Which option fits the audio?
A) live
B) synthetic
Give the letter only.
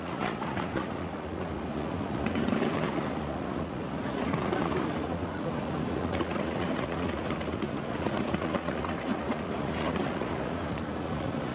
B